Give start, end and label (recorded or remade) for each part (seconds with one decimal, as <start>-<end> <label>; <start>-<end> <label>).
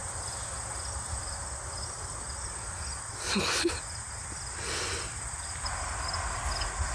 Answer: 0.0-6.9 recorded